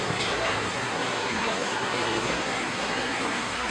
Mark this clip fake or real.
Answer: fake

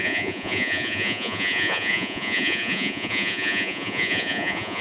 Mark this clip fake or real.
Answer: fake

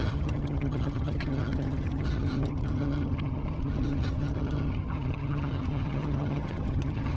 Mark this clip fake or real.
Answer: fake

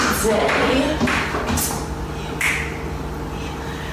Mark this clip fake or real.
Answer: real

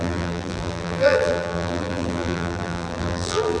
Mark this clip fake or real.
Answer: fake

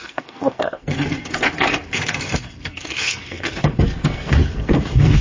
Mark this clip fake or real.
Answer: fake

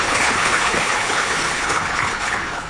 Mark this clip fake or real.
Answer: fake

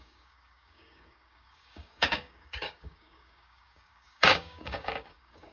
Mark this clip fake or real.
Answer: fake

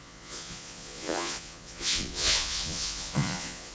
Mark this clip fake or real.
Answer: fake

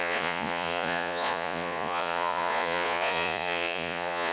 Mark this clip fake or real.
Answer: fake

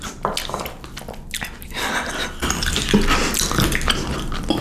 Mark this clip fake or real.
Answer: real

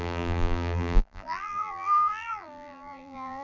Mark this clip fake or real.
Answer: fake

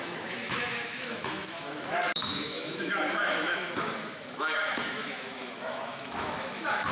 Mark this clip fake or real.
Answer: fake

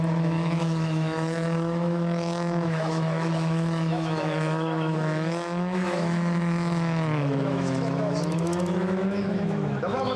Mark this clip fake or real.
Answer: fake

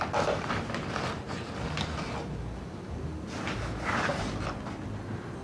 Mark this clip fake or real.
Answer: real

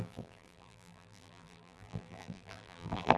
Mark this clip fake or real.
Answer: fake